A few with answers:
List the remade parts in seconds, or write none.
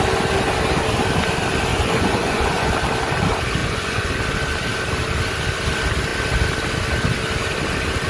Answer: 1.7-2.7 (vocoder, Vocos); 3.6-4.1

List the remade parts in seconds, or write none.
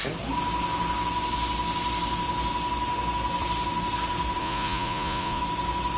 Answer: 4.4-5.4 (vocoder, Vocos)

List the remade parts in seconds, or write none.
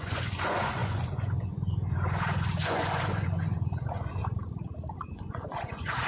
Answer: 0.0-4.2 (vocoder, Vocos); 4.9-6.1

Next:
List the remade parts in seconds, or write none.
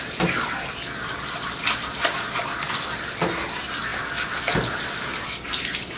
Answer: none